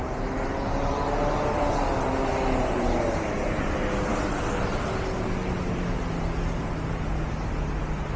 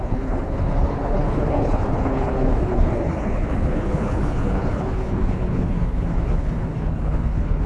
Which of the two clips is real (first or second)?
first